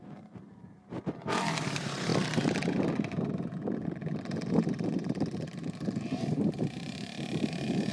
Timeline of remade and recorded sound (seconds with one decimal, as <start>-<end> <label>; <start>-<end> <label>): 0.0-2.1 remade; 2.1-4.5 recorded; 4.5-7.9 remade